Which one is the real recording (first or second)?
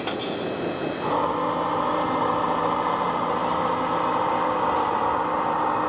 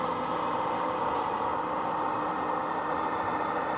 first